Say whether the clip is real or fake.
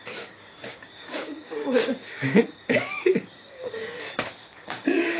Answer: fake